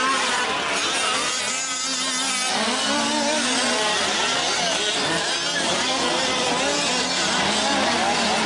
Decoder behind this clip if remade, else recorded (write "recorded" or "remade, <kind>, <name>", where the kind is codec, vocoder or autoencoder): recorded